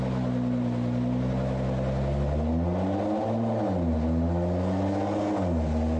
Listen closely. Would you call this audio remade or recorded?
recorded